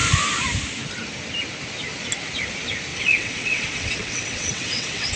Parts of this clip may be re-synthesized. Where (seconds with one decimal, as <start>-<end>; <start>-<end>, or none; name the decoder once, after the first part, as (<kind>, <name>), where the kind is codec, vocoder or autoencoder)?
2.9-5.2 (vocoder, WaveNeXt)